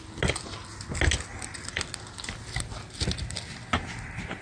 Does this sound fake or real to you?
real